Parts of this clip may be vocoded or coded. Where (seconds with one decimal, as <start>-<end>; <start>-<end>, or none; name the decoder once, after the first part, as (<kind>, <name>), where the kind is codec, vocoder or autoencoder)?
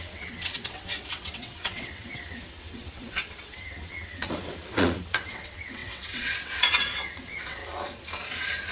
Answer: 0.0-7.6 (vocoder, WaveNeXt)